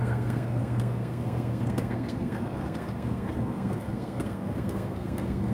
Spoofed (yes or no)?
yes